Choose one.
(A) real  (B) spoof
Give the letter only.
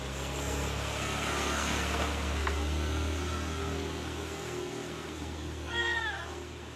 B